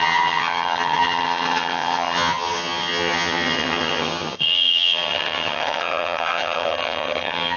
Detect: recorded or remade remade